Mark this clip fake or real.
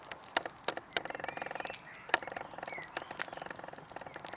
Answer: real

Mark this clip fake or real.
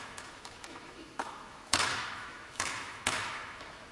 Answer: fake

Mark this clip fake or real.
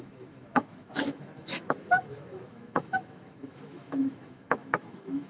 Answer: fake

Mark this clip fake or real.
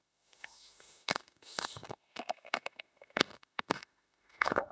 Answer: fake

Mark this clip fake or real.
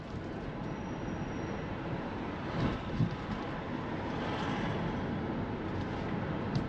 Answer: real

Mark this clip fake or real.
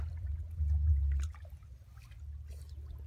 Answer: real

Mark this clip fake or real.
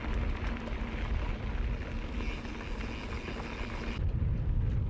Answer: real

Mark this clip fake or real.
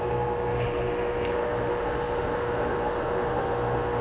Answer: fake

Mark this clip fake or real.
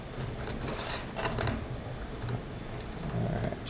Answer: real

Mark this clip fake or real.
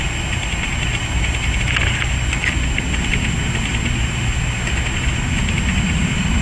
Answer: real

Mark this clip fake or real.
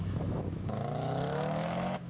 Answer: fake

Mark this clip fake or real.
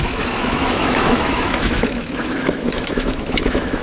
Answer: fake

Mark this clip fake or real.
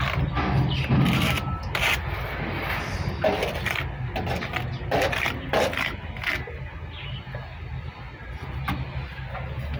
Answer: real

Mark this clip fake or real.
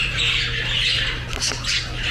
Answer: real